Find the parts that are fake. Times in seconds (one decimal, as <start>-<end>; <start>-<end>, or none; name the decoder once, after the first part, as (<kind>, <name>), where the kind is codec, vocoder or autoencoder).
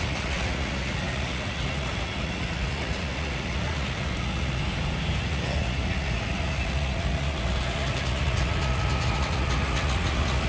0.0-4.6 (vocoder, Vocos); 5.2-10.5